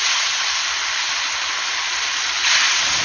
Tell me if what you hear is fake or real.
real